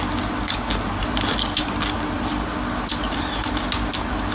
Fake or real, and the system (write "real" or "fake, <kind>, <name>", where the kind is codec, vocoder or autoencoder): real